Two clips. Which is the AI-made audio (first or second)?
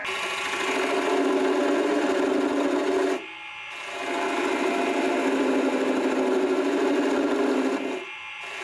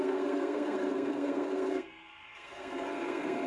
second